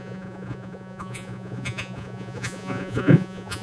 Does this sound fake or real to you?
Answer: fake